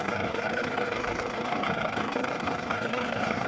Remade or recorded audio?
remade